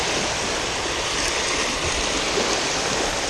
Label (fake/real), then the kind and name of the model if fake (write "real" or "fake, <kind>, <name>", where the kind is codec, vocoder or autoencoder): fake, vocoder, BigVGAN v2